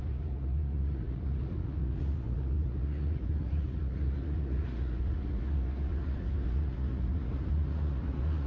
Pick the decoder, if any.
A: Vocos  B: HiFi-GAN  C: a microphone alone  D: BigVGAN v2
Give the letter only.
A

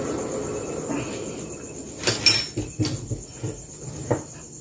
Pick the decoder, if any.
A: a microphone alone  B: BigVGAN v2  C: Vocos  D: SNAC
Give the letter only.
A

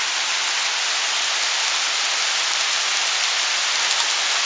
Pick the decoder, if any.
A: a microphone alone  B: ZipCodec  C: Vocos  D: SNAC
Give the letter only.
A